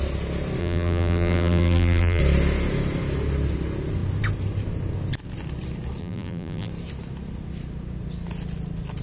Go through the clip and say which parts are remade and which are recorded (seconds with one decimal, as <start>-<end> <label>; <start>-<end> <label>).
0.0-0.6 recorded; 0.6-2.2 remade; 2.2-6.0 recorded; 6.0-6.7 remade; 6.7-9.0 recorded